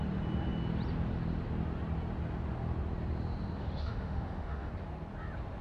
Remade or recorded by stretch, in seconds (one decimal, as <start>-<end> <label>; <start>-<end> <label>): 0.0-3.6 recorded; 3.6-4.7 remade; 4.7-5.6 recorded